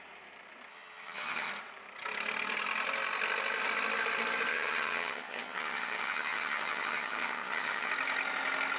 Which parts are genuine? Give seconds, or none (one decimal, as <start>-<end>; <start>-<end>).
0.0-0.7; 1.5-4.5; 7.9-8.8

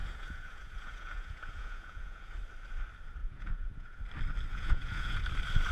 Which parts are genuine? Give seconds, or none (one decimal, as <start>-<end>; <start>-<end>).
2.3-3.2; 4.0-4.5; 5.2-5.7